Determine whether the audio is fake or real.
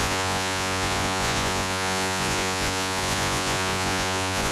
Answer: fake